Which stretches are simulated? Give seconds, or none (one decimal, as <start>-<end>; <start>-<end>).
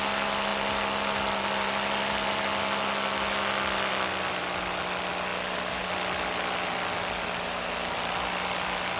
none